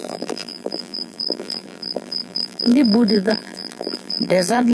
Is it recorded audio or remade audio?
remade